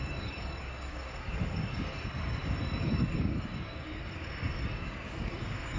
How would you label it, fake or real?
fake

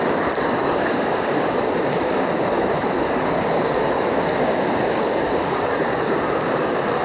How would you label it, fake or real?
fake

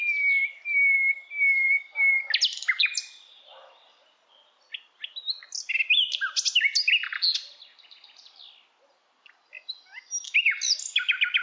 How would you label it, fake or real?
real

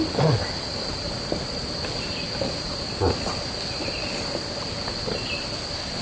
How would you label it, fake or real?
real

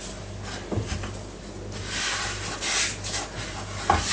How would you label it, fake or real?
real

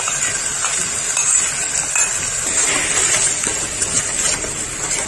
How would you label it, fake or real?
real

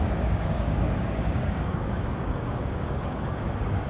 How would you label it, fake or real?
fake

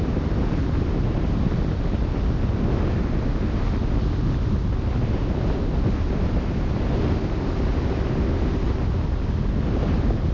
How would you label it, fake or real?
real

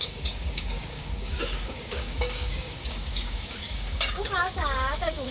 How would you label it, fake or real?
fake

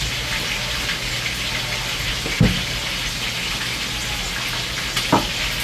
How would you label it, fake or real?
real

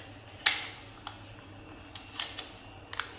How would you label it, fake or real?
real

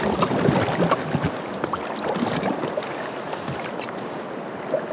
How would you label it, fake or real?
real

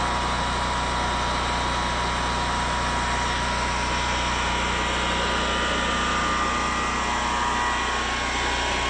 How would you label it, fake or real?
real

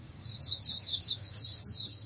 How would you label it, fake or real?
fake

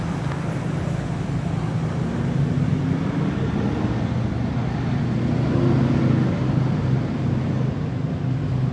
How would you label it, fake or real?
real